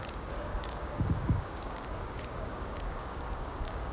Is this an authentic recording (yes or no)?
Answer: no